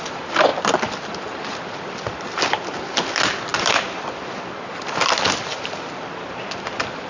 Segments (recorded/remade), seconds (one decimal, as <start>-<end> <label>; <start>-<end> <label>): 0.0-7.1 recorded